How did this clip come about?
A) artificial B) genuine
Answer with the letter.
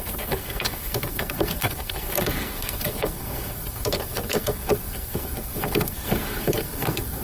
A